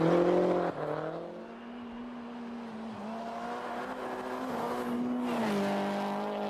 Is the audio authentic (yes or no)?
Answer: yes